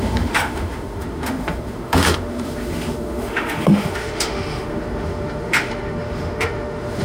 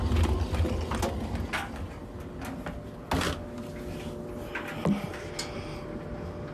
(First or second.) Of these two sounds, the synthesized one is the first